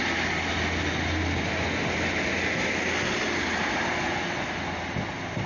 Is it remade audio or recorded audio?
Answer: recorded